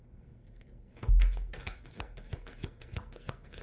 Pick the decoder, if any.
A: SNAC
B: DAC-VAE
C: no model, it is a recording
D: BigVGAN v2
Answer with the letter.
A